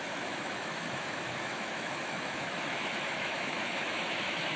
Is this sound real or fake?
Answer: fake